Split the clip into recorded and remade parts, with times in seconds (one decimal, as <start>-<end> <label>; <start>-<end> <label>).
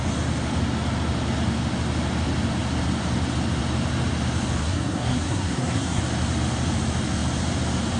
0.0-4.6 recorded; 4.6-6.0 remade; 6.0-8.0 recorded